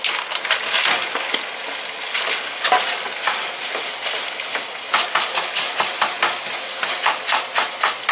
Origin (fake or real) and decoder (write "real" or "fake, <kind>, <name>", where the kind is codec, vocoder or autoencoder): real